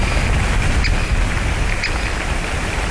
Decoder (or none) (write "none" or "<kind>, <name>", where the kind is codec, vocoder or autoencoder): none